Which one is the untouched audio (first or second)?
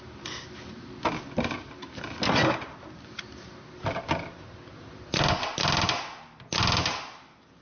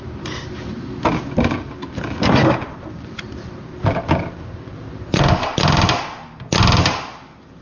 first